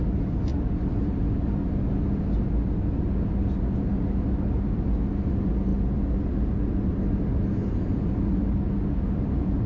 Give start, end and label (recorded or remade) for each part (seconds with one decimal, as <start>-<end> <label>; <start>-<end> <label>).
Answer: 0.0-9.7 recorded